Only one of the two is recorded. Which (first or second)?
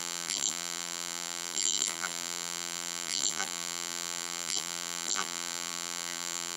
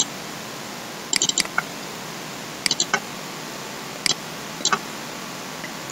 second